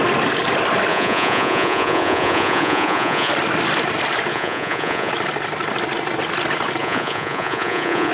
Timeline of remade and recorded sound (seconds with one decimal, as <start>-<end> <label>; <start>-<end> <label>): 0.0-0.9 recorded; 0.9-3.3 remade; 3.3-4.3 recorded; 4.3-5.1 remade; 5.1-6.8 recorded; 6.8-8.1 remade